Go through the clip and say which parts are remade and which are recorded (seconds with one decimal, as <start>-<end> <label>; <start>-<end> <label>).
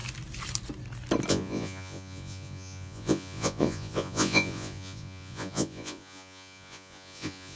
0.0-1.3 recorded; 1.3-7.6 remade